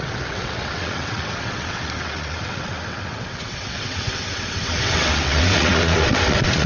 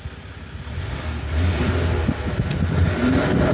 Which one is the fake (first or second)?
first